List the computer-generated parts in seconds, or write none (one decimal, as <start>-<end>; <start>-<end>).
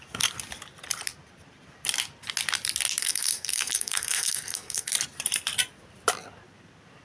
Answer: 3.0-4.9